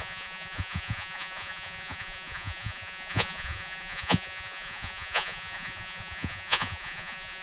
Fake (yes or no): yes